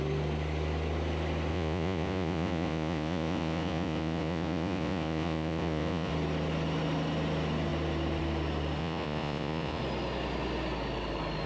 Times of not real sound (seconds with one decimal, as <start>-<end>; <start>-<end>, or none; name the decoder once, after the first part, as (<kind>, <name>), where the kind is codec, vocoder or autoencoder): 1.5-6.1 (vocoder, Vocos); 8.8-9.8